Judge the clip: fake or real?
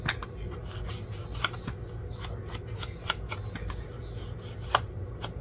real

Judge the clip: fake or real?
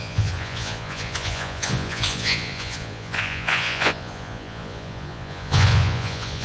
fake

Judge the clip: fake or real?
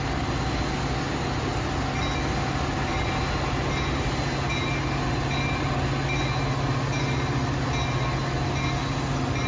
real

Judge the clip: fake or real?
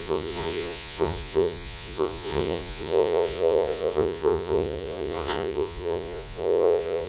fake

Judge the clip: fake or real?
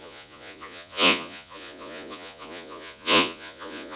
fake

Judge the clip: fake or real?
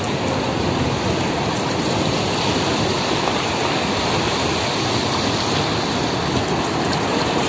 real